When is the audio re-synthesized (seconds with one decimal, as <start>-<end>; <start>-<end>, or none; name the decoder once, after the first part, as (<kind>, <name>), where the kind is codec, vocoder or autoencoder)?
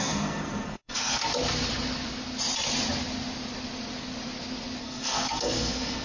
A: 0.0-1.2 (codec, SNAC); 4.8-6.0